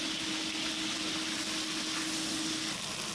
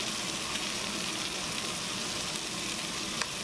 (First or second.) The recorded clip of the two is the first